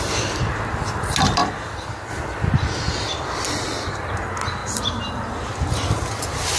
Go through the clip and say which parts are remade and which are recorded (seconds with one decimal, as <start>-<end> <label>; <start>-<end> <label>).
0.0-6.6 recorded